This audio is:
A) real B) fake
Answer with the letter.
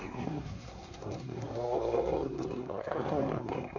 B